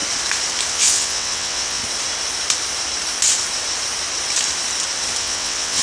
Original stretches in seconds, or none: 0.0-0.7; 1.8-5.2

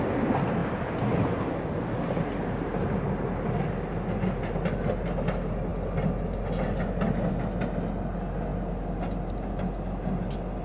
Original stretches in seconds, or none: 0.0-10.6